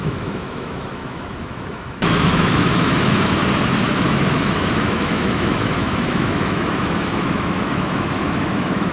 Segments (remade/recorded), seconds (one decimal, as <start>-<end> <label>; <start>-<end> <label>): 0.0-3.4 remade; 3.4-3.9 recorded; 3.9-8.9 remade

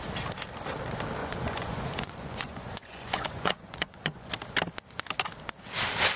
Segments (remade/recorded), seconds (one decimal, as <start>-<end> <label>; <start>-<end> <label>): 0.0-1.2 recorded; 1.2-4.3 remade; 4.3-6.2 recorded